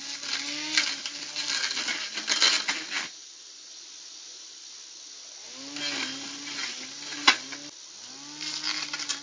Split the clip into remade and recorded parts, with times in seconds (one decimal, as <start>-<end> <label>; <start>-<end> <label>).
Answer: 0.0-9.2 recorded